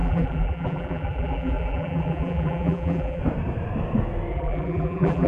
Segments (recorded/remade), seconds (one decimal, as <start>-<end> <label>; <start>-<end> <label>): 0.0-3.2 remade; 3.2-4.3 recorded; 4.3-5.3 remade